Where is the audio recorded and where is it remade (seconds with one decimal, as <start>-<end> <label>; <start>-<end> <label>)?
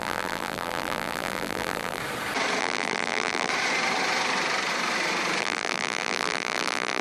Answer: 0.0-2.0 remade; 2.0-2.6 recorded; 2.6-3.5 remade; 3.5-5.4 recorded; 5.4-7.0 remade